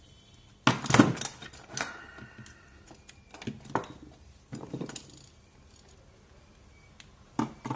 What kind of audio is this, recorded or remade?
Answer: recorded